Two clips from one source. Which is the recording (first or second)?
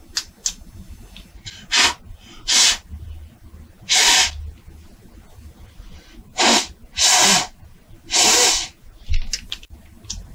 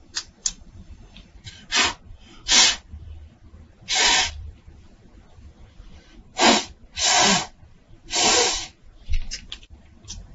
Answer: first